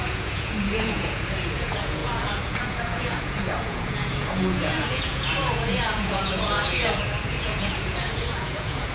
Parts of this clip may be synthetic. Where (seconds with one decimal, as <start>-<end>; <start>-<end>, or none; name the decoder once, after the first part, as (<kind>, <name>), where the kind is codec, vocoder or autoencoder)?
0.0-8.9 (vocoder, Vocos)